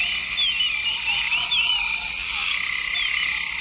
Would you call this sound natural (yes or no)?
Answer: yes